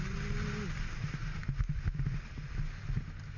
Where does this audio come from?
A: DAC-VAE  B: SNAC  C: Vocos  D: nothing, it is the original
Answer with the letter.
D